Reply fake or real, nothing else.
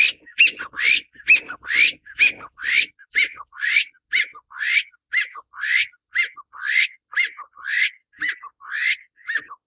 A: real